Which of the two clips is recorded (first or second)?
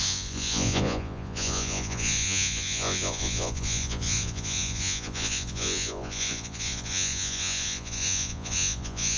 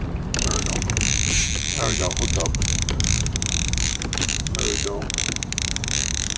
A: second